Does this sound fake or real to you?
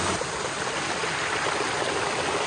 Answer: fake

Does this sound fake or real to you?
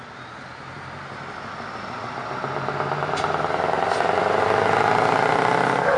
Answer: real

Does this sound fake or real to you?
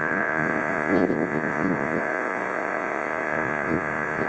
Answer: fake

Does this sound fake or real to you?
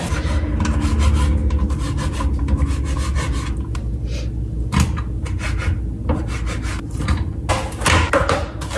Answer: real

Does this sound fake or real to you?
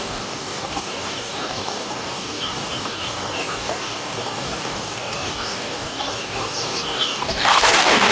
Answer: fake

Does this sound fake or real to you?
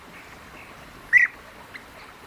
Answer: real